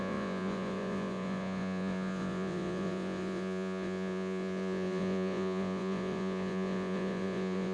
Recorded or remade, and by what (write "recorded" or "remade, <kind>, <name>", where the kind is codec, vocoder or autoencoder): remade, vocoder, Vocos